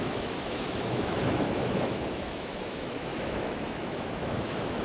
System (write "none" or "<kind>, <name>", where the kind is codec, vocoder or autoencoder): autoencoder, DAC-VAE